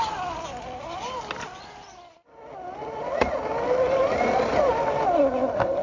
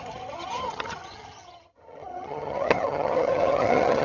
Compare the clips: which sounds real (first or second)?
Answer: first